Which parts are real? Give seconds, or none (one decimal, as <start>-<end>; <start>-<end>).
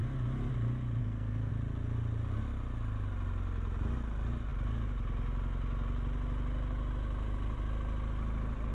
0.0-1.0; 1.5-8.7